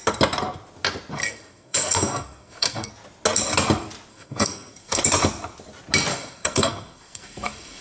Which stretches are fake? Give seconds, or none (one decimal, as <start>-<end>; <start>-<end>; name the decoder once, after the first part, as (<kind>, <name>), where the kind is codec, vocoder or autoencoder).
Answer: 1.2-2.9 (codec, SNAC); 4.1-5.0; 6.1-7.8